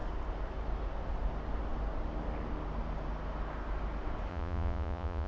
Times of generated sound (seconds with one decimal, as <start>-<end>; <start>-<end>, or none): 4.3-5.3